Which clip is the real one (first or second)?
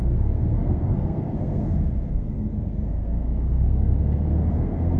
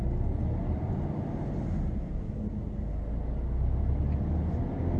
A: second